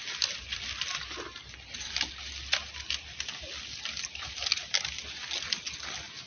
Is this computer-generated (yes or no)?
no